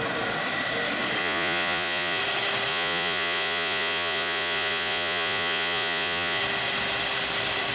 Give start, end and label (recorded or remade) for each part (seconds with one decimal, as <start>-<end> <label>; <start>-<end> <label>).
0.0-1.2 recorded; 1.2-2.2 remade; 2.2-2.7 recorded; 2.7-6.4 remade; 6.4-7.7 recorded